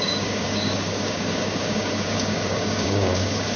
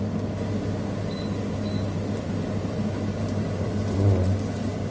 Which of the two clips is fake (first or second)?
first